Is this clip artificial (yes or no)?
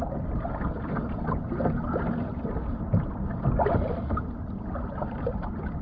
no